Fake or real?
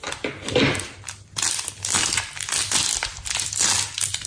real